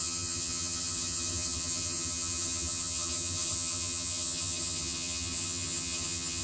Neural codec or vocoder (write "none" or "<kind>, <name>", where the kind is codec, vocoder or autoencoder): vocoder, HiFi-GAN